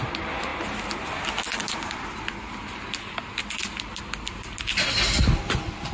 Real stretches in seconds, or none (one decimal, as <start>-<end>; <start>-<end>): 0.0-5.9